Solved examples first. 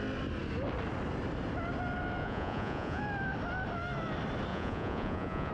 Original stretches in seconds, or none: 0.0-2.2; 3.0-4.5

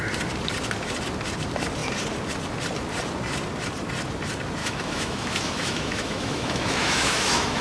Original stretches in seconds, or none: 0.0-4.6

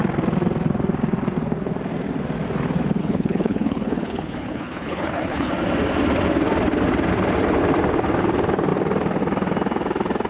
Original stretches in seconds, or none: 0.0-3.0; 5.5-10.3

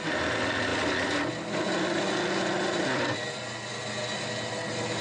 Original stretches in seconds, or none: 0.0-5.0

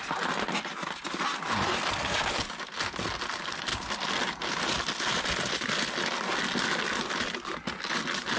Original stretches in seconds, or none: 0.0-8.4

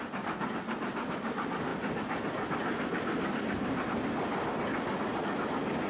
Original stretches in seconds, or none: 0.0-5.9

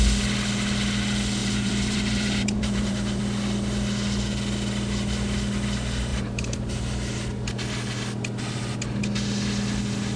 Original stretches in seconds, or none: 0.0-1.4; 3.2-6.1; 6.8-10.2